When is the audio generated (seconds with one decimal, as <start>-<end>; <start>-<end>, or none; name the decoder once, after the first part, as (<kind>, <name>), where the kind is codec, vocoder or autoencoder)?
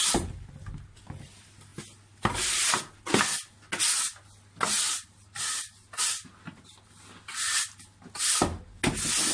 none